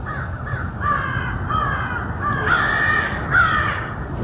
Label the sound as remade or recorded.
recorded